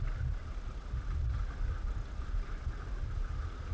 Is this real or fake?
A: real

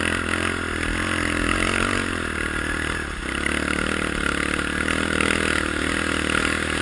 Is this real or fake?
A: real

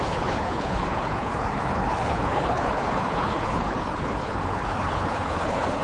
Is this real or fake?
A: fake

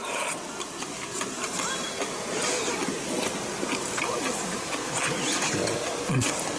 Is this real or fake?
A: real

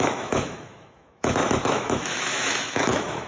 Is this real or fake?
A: fake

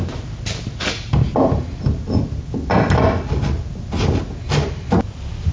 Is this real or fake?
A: real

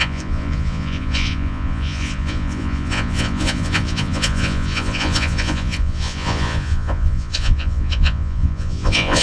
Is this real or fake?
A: fake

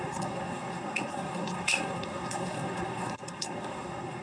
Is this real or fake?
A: fake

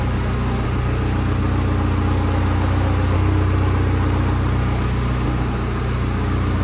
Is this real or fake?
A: real